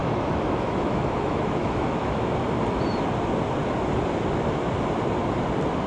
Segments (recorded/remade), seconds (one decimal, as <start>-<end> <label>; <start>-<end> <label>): 0.0-2.3 remade; 2.3-5.9 recorded